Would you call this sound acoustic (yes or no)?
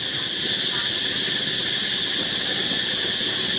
yes